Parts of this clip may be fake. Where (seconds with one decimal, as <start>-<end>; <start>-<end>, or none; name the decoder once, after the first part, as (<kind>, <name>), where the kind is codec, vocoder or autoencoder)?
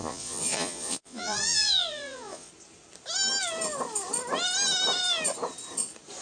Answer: 0.0-2.5 (vocoder, Vocos)